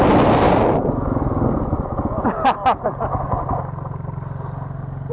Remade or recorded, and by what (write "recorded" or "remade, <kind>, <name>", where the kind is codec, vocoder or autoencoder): recorded